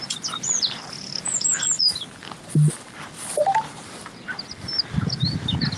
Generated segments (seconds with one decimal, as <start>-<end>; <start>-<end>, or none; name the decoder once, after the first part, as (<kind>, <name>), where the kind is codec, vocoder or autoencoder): 3.3-4.0 (vocoder, BigVGAN v2); 5.2-5.8